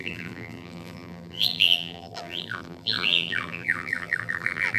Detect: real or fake fake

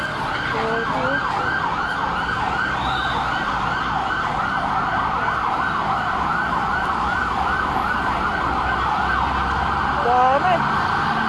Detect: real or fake real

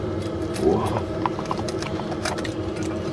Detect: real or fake real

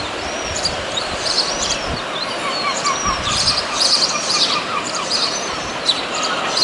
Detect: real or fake fake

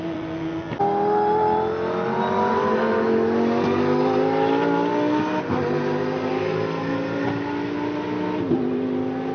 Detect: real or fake real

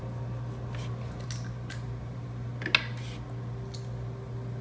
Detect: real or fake real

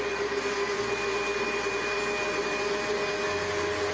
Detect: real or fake real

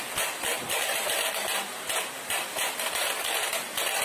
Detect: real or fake real